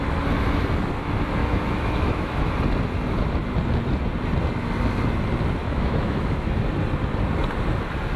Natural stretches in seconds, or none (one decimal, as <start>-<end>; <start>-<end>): 0.0-1.4; 2.5-5.6; 6.6-8.2